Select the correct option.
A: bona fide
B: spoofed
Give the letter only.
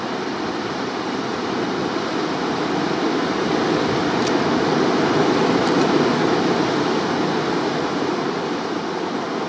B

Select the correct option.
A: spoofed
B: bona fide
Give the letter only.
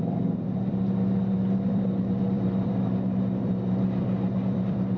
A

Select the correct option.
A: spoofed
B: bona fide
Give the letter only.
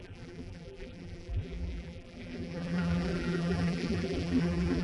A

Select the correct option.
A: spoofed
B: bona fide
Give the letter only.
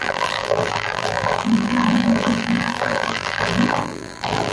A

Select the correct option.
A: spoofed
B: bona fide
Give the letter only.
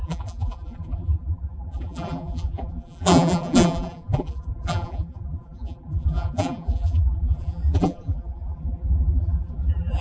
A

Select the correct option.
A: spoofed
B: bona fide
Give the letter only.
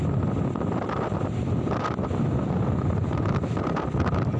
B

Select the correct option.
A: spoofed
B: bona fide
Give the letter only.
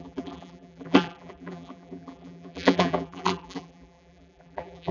A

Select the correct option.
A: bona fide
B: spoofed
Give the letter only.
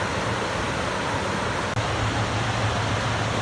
A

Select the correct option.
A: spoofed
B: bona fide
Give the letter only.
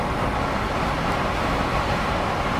B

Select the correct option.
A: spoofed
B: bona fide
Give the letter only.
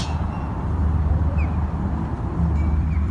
A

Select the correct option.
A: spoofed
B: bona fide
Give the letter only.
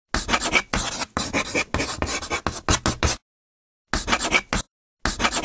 B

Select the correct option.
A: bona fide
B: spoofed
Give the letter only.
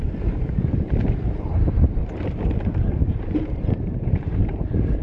B